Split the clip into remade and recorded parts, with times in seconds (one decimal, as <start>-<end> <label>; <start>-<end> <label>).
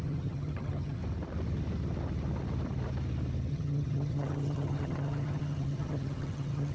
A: 0.0-1.0 remade; 1.0-3.5 recorded; 3.5-6.7 remade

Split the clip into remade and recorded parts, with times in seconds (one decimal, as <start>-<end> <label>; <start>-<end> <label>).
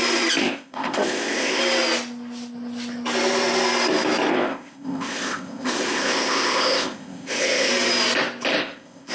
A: 0.0-0.4 recorded; 0.4-1.6 remade; 1.6-4.3 recorded; 4.3-7.7 remade; 7.7-8.6 recorded; 8.6-9.1 remade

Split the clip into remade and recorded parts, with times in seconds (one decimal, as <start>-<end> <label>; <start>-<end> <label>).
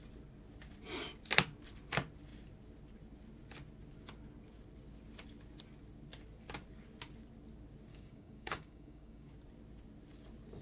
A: 0.0-7.9 recorded; 7.9-9.3 remade; 9.3-10.6 recorded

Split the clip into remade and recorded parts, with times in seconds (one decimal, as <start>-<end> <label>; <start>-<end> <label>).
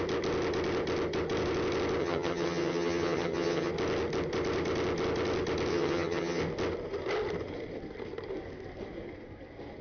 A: 0.0-2.0 recorded; 2.0-3.7 remade; 3.7-5.7 recorded; 5.7-6.4 remade; 6.4-9.8 recorded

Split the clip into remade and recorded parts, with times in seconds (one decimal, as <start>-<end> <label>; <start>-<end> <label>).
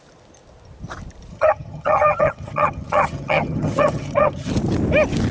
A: 0.0-1.3 recorded; 1.3-4.5 remade; 4.5-5.3 recorded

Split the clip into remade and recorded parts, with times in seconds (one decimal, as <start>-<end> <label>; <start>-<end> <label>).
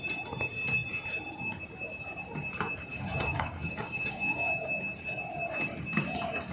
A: 0.0-2.9 recorded; 2.9-4.5 remade; 4.5-6.5 recorded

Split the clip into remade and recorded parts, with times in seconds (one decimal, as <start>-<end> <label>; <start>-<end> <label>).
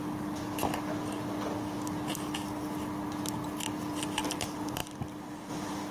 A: 0.0-4.8 recorded; 4.8-5.5 remade; 5.5-5.9 recorded